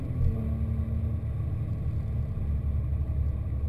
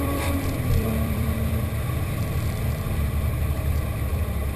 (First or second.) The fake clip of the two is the second